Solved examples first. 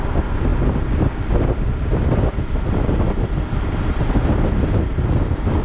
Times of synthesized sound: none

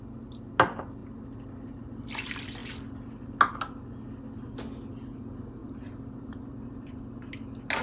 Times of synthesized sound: 5.6-7.0